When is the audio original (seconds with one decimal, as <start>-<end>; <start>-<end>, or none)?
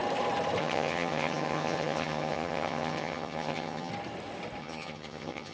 0.0-0.6; 3.9-4.6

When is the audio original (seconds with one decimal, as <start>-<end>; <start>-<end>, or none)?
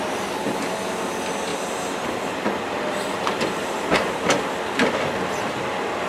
0.0-1.5; 4.2-6.1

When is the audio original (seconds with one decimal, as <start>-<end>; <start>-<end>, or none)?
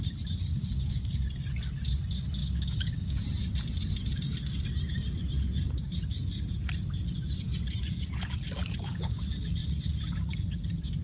0.0-0.5; 1.1-2.4; 3.2-8.6; 9.2-11.0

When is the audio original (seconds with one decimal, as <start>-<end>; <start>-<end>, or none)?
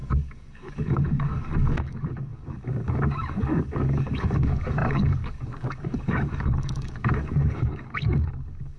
none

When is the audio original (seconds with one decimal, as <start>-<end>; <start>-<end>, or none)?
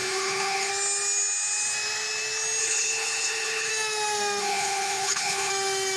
0.7-2.6; 3.7-4.4; 5.5-6.0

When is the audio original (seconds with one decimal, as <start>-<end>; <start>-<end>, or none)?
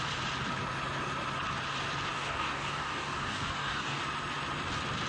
0.0-2.1; 4.0-5.1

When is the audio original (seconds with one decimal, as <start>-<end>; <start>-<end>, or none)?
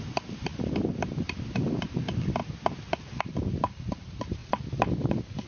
2.4-3.2; 4.4-5.5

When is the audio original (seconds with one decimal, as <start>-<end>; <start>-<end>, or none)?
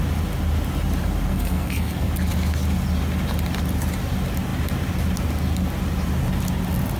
0.0-1.3; 2.1-7.0